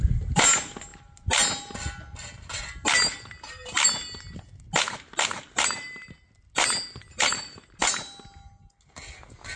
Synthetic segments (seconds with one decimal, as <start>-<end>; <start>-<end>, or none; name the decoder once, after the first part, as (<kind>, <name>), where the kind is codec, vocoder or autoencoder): none